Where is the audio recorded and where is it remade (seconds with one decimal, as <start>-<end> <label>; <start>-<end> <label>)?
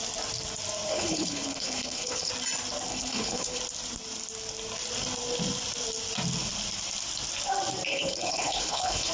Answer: 0.0-0.9 recorded; 0.9-2.3 remade; 2.3-2.9 recorded; 2.9-3.6 remade; 3.6-7.9 recorded; 7.9-9.1 remade